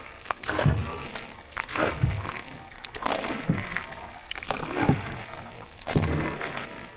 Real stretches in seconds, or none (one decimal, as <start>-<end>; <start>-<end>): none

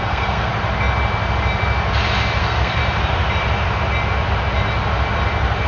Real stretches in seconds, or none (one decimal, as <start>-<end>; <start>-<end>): 0.5-2.4; 2.8-5.7

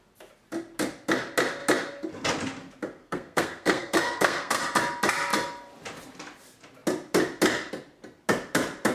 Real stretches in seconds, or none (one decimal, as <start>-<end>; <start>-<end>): 0.0-3.0; 4.6-8.9

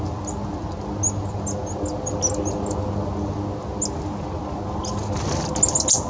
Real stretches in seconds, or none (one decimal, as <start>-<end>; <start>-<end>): 0.0-6.1

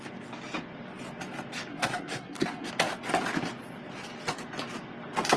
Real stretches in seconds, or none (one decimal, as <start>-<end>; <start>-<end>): 0.0-1.7; 2.7-5.4